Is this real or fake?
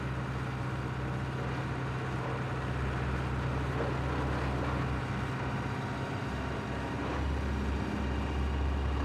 real